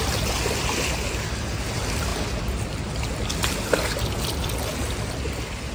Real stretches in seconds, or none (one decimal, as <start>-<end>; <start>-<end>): 0.0-5.7